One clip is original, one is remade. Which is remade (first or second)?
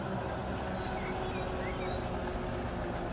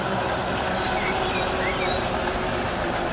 second